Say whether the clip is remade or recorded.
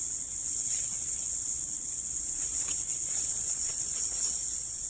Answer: remade